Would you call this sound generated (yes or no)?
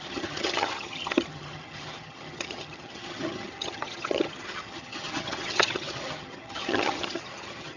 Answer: yes